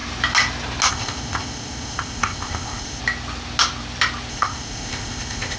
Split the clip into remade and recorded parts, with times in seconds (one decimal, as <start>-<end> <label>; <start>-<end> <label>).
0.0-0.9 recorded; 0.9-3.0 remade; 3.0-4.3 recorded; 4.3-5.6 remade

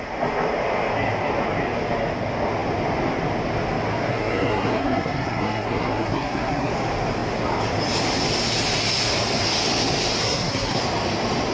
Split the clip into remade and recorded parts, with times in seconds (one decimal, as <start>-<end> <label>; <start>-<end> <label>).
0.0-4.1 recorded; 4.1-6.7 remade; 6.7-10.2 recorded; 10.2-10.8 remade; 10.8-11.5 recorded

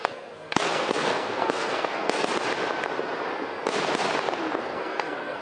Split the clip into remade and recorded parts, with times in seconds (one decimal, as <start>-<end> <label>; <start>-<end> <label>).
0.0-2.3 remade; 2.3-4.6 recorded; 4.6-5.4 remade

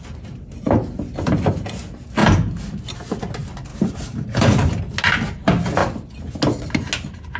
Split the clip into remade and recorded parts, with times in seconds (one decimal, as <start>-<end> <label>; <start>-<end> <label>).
0.0-3.7 recorded; 3.7-4.8 remade; 4.8-7.4 recorded

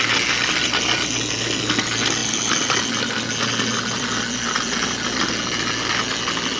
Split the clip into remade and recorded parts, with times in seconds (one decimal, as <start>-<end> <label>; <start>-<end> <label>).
0.0-6.6 recorded

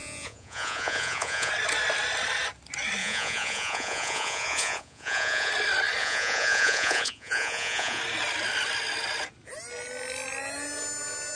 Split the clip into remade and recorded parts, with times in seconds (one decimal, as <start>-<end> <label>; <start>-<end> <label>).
0.0-1.5 remade; 1.5-3.0 recorded; 3.0-5.5 remade; 5.5-6.0 recorded; 6.0-8.0 remade; 8.0-11.4 recorded

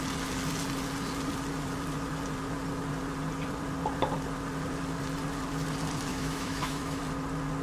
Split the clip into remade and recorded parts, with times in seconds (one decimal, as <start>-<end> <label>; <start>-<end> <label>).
0.0-6.1 recorded; 6.1-7.0 remade; 7.0-7.6 recorded

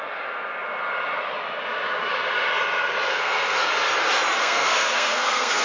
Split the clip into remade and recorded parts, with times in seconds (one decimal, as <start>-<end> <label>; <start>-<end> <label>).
0.0-3.1 recorded; 3.1-3.7 remade; 3.7-4.4 recorded; 4.4-5.6 remade